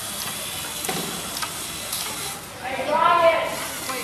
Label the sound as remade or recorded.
recorded